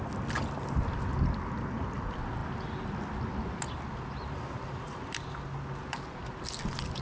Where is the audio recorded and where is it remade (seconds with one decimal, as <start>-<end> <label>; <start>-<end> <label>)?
0.0-7.0 recorded